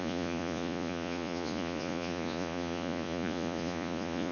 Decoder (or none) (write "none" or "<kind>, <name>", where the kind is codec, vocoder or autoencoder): vocoder, Vocos